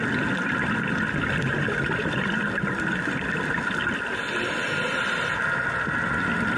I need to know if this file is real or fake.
real